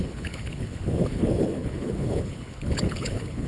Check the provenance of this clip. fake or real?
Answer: fake